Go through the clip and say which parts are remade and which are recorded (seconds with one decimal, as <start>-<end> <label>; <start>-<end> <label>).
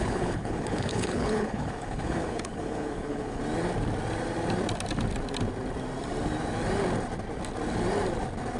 0.0-3.4 remade; 3.4-8.6 recorded